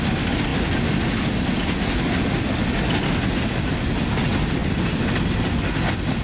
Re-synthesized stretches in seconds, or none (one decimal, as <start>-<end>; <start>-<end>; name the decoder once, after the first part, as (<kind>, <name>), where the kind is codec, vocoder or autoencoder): none